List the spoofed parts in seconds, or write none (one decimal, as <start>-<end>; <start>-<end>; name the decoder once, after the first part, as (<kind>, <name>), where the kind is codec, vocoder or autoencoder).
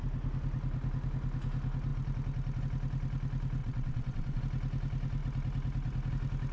3.6-4.4 (vocoder, WaveNeXt)